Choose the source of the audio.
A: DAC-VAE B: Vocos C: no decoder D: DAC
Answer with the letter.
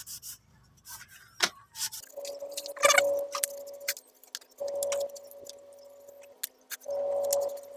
C